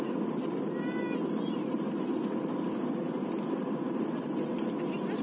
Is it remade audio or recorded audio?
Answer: recorded